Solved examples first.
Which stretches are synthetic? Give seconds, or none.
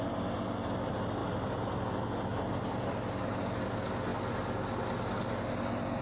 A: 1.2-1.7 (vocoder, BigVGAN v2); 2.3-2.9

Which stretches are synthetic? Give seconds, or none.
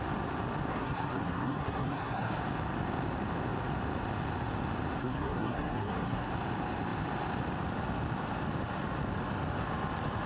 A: 0.7-2.4 (codec, SNAC); 5.0-6.3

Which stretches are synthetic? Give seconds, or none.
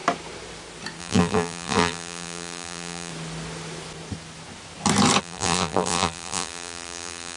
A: 1.0-3.1 (vocoder, BigVGAN v2); 5.2-7.4